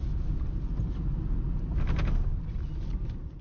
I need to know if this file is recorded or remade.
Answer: recorded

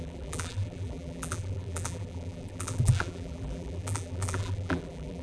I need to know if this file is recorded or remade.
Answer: remade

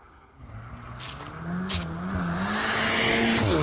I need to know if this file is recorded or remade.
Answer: recorded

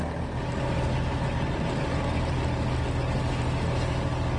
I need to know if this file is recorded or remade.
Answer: recorded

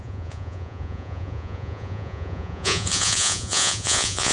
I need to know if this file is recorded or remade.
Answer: remade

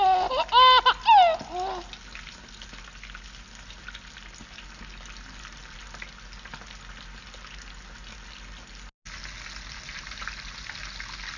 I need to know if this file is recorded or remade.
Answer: recorded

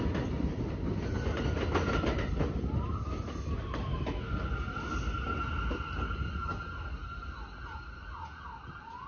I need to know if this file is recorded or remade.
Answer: recorded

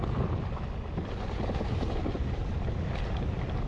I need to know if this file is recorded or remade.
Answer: recorded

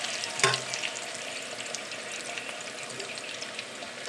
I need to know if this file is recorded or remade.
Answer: recorded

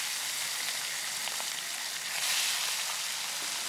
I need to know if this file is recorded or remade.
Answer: recorded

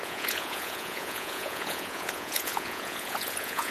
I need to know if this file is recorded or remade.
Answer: remade